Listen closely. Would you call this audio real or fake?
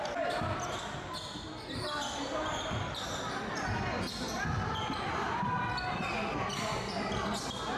real